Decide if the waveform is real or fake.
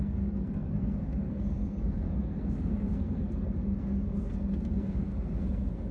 fake